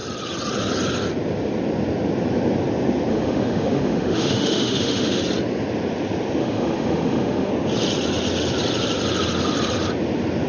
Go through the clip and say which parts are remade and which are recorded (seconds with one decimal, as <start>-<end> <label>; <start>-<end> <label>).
0.0-3.1 recorded; 3.1-5.2 remade; 5.2-6.4 recorded; 6.4-7.5 remade; 7.5-10.5 recorded